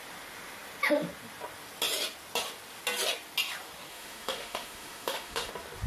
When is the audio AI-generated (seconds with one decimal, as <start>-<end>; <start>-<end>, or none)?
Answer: 3.9-5.5